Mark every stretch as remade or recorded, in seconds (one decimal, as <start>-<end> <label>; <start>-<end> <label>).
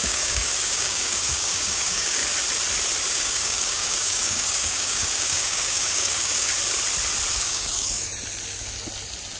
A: 0.0-2.2 remade; 2.2-3.1 recorded; 3.1-6.5 remade; 6.5-7.3 recorded; 7.3-8.1 remade; 8.1-9.4 recorded